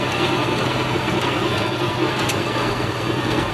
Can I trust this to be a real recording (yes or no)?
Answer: no